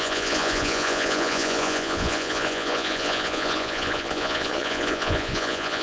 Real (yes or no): no